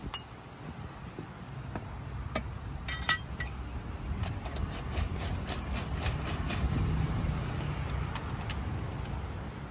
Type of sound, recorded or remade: recorded